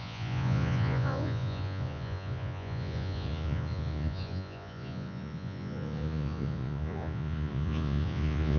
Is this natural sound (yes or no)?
no